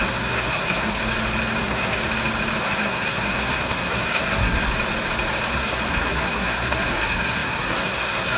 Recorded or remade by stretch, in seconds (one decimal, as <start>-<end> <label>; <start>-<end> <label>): 0.0-1.0 remade; 1.0-1.6 recorded; 1.6-2.0 remade; 2.0-2.6 recorded; 2.6-4.7 remade; 4.7-5.5 recorded; 5.5-8.4 remade